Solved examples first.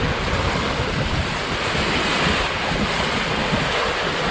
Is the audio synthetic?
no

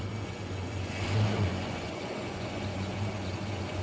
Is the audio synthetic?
yes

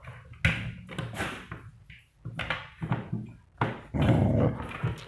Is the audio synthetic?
no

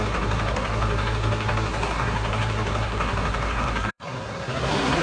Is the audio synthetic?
yes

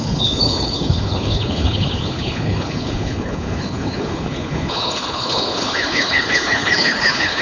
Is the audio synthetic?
yes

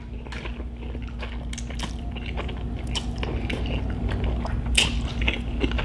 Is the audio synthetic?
no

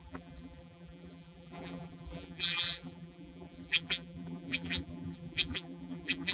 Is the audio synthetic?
yes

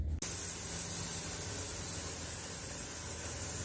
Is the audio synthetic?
no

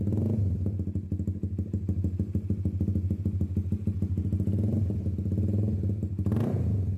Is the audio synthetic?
no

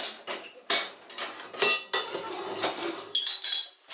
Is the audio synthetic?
no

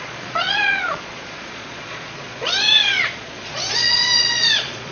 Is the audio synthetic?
yes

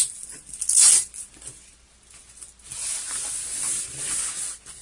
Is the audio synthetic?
no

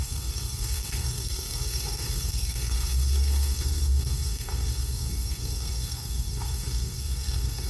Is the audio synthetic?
yes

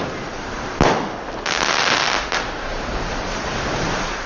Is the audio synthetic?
no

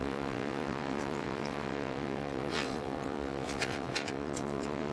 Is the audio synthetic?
yes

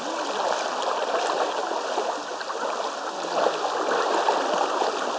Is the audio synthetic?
no